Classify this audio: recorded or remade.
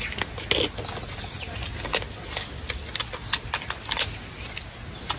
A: recorded